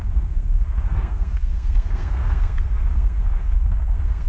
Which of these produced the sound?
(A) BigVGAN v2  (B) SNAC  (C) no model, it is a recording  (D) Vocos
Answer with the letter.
B